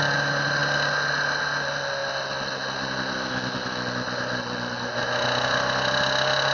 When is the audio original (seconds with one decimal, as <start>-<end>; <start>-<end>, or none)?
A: 0.0-6.5

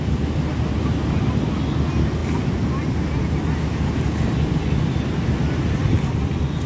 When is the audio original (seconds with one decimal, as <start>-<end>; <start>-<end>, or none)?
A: 0.0-6.7

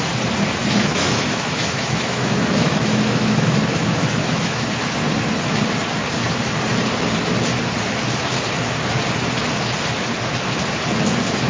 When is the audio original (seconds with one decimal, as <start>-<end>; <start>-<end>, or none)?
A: 0.0-0.6; 4.8-11.5

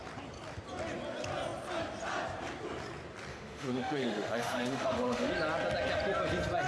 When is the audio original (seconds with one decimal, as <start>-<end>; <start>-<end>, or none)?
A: 0.0-3.3; 5.3-6.7

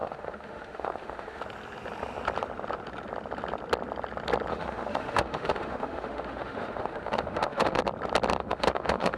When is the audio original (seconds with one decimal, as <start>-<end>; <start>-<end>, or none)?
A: 1.4-4.5; 7.8-8.4

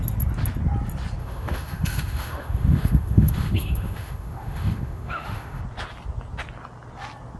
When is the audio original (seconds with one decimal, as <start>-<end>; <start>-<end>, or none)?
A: 0.0-1.2; 5.6-7.4

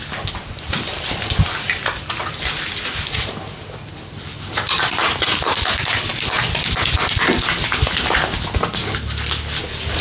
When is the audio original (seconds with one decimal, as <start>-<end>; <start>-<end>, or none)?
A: 0.0-10.0

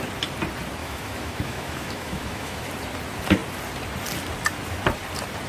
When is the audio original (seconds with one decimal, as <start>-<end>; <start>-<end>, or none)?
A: 0.0-0.8; 2.6-5.5